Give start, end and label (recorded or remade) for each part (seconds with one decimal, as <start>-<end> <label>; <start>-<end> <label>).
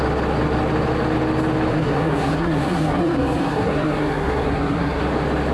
0.0-1.7 recorded; 1.7-5.0 remade; 5.0-5.5 recorded